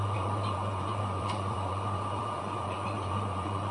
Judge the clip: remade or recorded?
remade